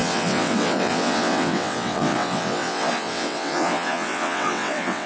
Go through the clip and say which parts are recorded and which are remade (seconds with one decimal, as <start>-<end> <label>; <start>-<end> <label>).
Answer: 0.0-5.1 remade